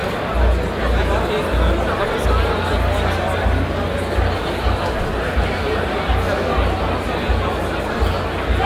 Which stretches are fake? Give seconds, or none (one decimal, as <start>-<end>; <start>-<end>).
none